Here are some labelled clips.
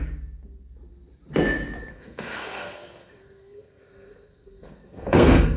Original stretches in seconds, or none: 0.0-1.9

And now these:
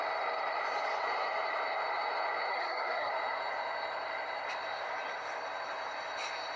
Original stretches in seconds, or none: 0.0-2.5; 3.1-6.6

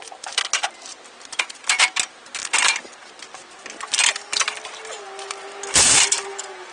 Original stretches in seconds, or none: 0.0-6.7

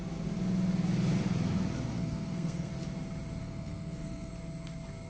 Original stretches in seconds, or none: 0.0-1.9; 2.7-3.4; 4.3-5.1

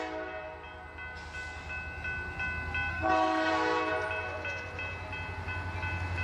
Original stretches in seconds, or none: 0.0-2.9; 3.5-6.2

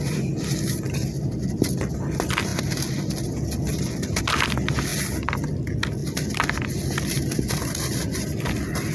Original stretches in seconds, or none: 0.0-8.9